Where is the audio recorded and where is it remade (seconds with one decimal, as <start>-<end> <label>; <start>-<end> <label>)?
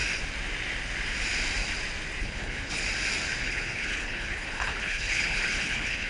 0.0-2.2 recorded; 2.2-2.8 remade; 2.8-3.4 recorded; 3.4-6.1 remade